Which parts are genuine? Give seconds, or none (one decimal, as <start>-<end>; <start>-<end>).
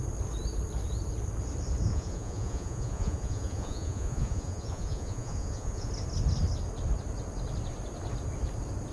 0.0-1.9; 5.9-8.9